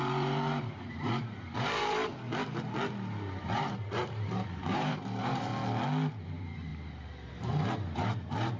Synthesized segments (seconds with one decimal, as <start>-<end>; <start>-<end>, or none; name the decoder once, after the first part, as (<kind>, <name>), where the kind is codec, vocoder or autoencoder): 0.0-2.1 (vocoder, BigVGAN v2); 3.4-5.5; 6.2-6.7; 7.3-8.6